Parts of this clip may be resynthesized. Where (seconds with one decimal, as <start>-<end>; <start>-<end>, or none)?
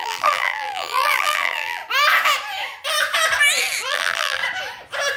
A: 0.0-1.8; 3.9-4.4